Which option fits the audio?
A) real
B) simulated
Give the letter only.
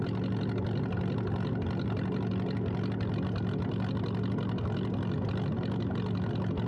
A